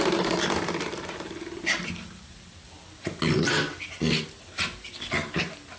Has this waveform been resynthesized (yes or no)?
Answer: no